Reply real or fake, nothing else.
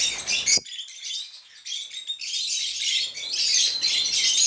real